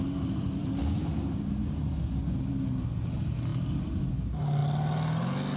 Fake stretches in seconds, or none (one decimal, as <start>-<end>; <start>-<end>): none